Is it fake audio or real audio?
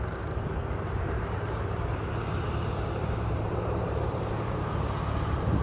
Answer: fake